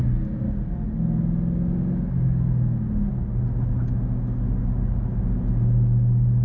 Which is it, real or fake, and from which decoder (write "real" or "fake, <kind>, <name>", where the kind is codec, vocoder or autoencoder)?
real